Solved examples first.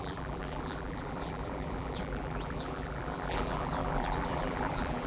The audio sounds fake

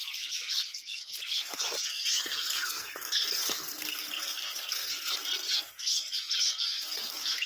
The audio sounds fake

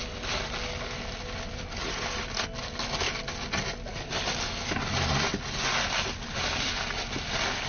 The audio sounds real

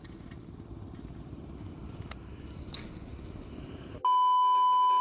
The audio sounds real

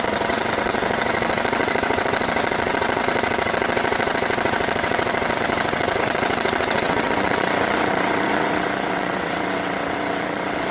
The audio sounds fake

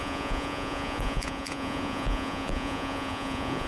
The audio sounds fake